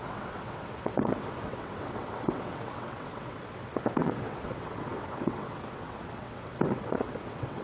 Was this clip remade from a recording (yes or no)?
yes